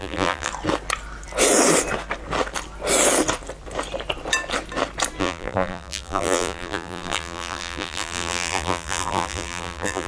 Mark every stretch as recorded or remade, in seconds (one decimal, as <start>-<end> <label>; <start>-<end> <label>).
0.0-0.5 remade; 0.5-5.2 recorded; 5.2-10.1 remade